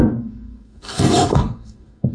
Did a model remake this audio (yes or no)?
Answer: yes